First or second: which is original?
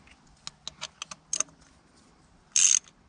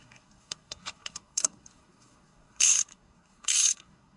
first